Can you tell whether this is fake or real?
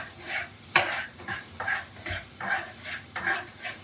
fake